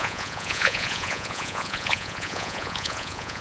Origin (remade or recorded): remade